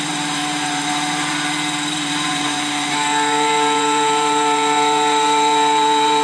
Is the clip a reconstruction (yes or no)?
yes